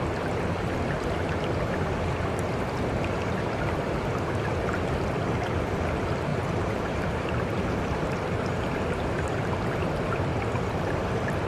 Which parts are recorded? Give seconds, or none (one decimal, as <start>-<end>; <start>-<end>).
0.0-6.3; 7.8-10.3